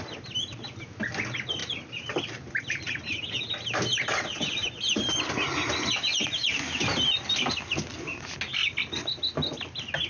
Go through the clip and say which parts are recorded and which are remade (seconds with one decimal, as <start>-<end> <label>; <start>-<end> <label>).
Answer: 0.0-10.1 recorded